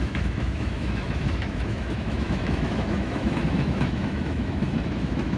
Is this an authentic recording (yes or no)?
no